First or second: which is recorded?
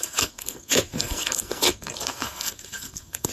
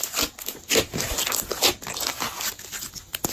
second